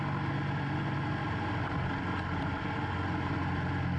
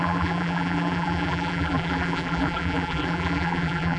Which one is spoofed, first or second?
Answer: second